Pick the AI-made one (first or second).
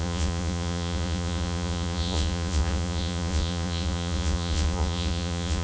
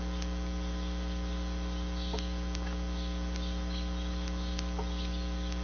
first